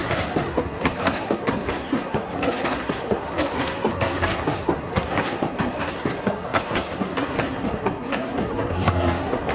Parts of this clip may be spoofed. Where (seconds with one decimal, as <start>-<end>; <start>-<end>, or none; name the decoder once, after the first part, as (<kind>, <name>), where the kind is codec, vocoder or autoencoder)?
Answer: 0.0-9.5 (codec, SNAC)